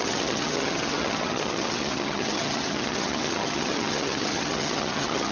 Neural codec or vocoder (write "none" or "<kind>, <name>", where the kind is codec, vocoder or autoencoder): vocoder, HiFi-GAN